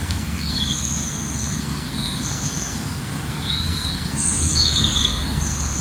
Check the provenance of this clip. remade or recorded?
remade